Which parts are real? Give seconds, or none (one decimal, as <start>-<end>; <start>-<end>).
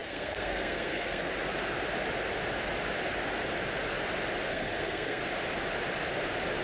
1.3-4.5; 5.2-6.6